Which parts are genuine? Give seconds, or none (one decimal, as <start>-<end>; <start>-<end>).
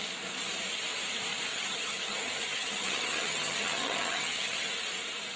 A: 0.0-1.5; 4.7-5.4